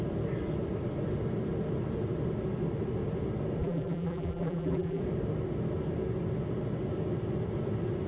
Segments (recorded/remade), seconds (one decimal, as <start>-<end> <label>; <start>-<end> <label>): 0.0-3.6 recorded; 3.6-5.0 remade; 5.0-8.1 recorded